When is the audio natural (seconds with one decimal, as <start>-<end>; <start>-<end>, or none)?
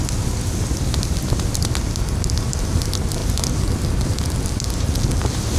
0.0-5.6